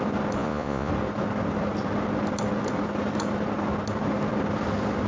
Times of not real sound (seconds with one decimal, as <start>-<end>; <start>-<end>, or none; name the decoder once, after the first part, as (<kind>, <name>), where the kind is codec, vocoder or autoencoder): 0.4-0.9 (vocoder, Vocos)